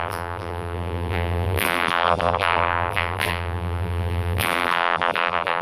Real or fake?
fake